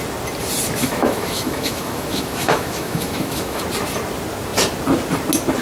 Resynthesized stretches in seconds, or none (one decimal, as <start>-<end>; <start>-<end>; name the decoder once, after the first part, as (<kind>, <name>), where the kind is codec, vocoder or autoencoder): 0.8-3.6 (autoencoder, DAC-VAE)